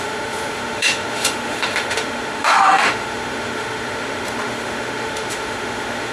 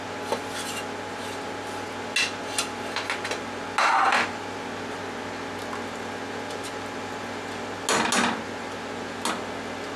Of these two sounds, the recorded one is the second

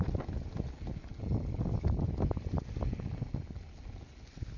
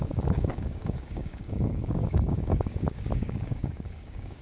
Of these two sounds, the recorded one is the first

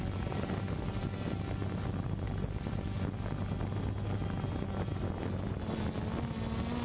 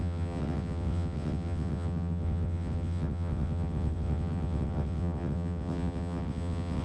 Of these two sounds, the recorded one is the first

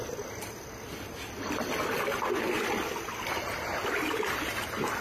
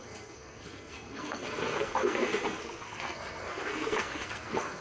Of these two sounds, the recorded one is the first